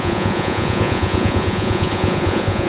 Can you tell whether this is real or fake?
fake